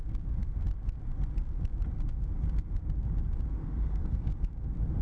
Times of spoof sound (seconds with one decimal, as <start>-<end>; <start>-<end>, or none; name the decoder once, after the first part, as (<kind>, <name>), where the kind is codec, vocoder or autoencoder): 3.6-4.3 (codec, SNAC)